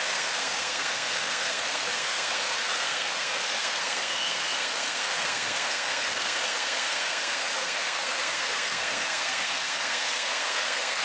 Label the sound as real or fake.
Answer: fake